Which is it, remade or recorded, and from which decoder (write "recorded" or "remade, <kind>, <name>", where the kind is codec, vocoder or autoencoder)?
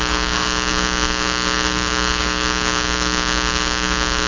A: remade, codec, DAC